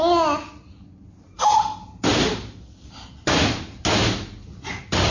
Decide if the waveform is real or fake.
real